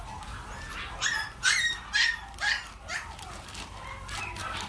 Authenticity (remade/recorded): recorded